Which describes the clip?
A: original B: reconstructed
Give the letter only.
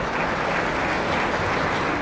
A